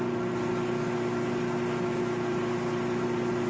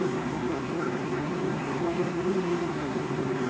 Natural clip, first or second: first